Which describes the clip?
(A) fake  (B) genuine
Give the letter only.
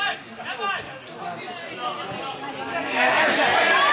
B